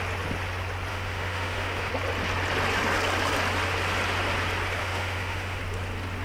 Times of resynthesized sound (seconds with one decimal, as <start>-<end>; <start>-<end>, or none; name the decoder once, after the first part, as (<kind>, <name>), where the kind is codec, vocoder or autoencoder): 0.9-1.9 (autoencoder, DAC-VAE); 4.8-5.6